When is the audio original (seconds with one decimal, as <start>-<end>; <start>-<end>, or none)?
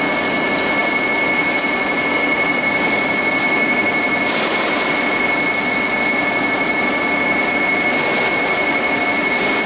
0.0-9.7